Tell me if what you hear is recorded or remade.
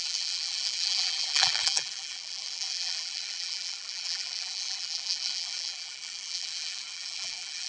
remade